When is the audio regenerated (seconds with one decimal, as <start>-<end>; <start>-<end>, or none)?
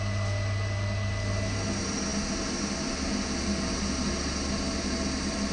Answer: none